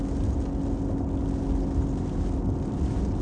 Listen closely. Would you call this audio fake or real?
real